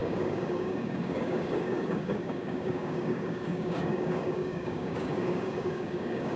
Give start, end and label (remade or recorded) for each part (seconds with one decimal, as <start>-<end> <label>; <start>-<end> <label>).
0.0-6.4 remade